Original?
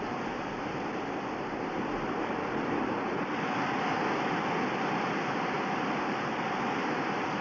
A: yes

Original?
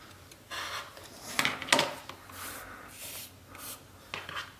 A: yes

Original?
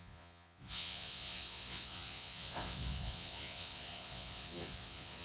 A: no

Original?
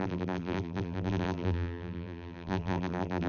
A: no